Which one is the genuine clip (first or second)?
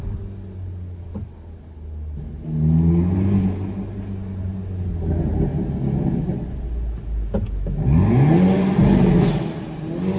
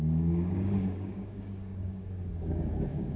first